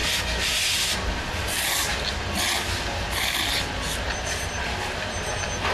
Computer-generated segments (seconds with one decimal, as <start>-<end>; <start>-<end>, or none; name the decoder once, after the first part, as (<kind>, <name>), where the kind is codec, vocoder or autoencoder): none